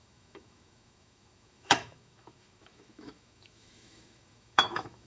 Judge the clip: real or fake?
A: fake